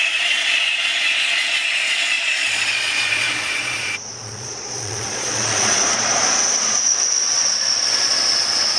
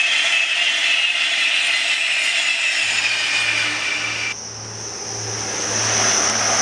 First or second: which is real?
second